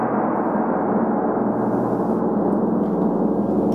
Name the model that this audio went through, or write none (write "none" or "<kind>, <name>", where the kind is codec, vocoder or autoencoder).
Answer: none